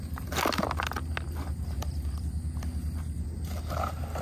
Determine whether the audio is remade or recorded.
recorded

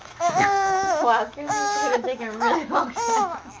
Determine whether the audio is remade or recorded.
remade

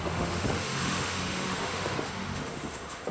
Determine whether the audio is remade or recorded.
remade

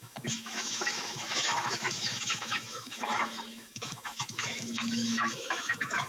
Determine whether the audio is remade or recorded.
remade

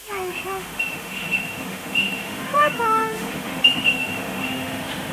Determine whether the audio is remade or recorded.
remade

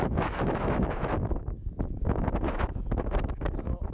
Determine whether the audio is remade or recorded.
remade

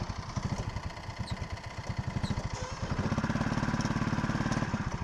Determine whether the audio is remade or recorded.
recorded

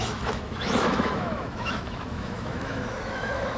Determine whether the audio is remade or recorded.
remade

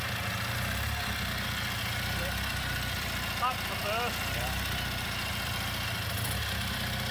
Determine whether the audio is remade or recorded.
recorded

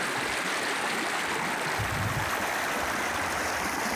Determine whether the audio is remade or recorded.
recorded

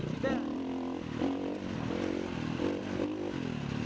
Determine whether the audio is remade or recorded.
recorded